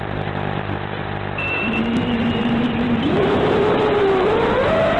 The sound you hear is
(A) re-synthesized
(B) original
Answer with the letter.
A